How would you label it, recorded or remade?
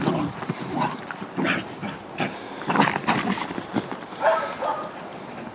recorded